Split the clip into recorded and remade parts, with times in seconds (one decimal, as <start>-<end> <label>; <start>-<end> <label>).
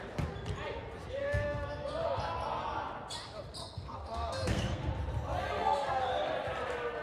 0.0-1.2 recorded; 1.2-2.2 remade; 2.2-3.6 recorded; 3.6-4.9 remade; 4.9-5.4 recorded; 5.4-6.1 remade; 6.1-7.0 recorded